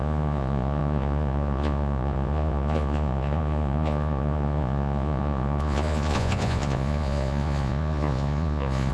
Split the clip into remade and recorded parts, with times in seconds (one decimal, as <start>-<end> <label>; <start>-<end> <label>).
0.0-8.9 remade